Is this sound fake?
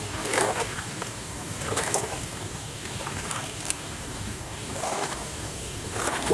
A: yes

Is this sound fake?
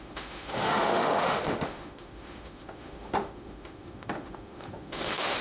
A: yes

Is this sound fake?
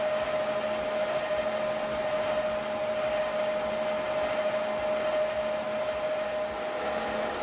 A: no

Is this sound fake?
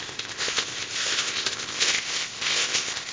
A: yes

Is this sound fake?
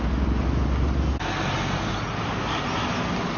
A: no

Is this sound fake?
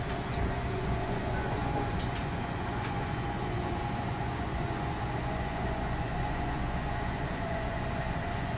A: yes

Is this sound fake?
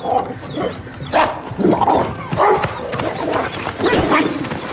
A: no